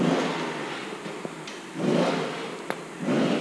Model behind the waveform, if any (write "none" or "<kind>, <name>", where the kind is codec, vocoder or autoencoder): none